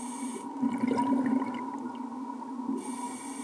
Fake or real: real